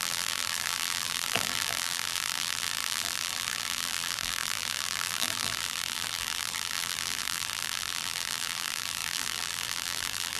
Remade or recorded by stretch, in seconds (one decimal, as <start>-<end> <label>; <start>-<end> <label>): 0.0-10.4 remade